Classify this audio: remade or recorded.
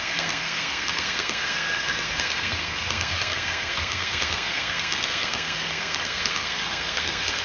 remade